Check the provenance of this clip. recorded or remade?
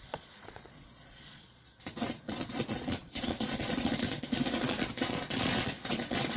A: remade